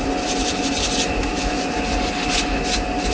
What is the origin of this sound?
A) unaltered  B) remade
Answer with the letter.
A